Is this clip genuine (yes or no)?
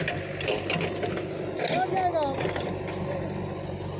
yes